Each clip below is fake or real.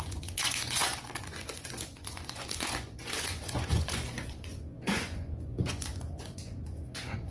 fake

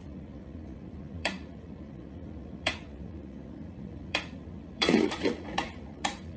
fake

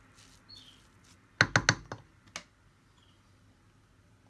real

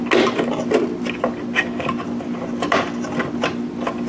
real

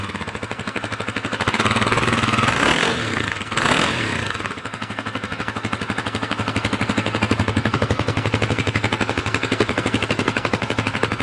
fake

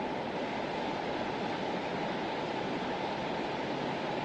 real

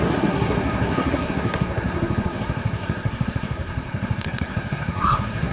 fake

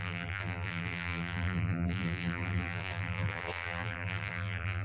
fake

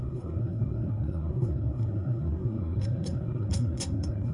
fake